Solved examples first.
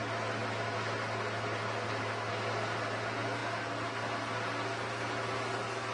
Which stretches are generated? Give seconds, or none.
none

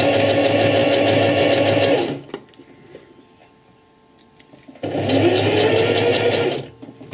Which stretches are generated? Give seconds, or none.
none